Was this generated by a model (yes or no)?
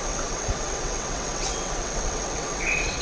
yes